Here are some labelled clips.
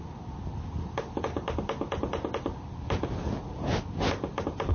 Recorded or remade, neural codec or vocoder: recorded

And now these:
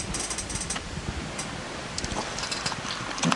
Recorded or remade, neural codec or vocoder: recorded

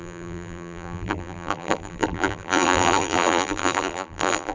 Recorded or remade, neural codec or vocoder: remade, vocoder, BigVGAN v2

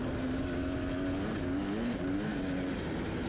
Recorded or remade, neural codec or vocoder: recorded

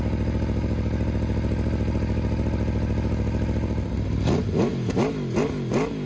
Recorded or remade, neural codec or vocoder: recorded